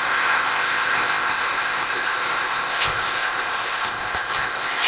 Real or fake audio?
fake